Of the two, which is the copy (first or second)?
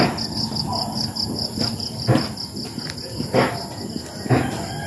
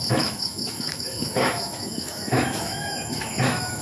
second